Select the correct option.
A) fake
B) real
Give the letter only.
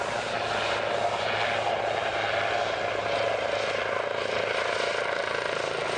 B